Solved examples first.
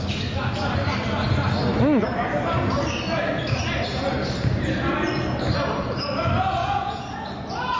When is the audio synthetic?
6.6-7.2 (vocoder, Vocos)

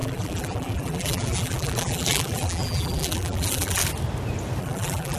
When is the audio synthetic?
0.0-3.8 (vocoder, BigVGAN v2); 4.6-5.2

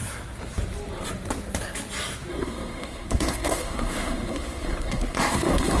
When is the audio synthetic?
2.3-5.8 (codec, SNAC)

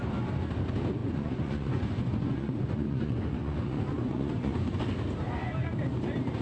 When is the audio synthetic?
1.0-4.8 (vocoder, Vocos)

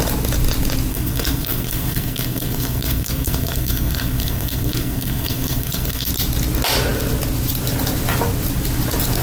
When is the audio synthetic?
0.9-6.1 (codec, SNAC)

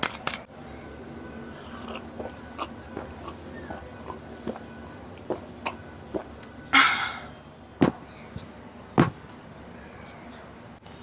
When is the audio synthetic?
3.9-6.2 (vocoder, BigVGAN v2)